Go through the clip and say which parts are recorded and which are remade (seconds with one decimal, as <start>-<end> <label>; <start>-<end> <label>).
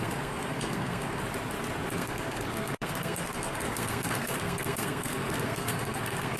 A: 0.0-1.2 remade; 1.2-1.9 recorded; 1.9-6.4 remade